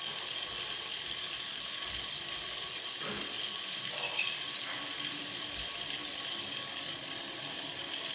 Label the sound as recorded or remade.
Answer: recorded